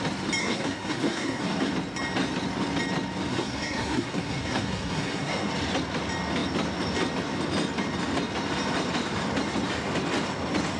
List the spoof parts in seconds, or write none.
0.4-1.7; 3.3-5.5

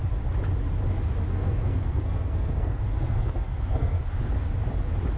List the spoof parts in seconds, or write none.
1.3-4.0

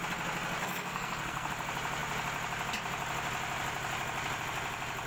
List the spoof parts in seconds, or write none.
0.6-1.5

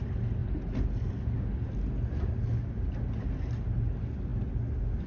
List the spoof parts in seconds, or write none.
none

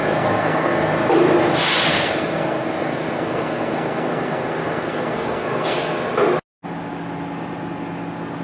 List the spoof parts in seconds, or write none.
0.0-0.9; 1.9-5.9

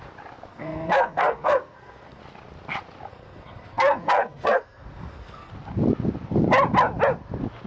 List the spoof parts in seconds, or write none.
0.5-2.2; 3.1-5.5

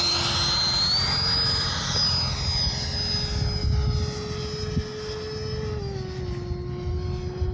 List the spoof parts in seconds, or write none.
none